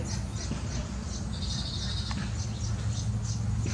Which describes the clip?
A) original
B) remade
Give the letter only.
A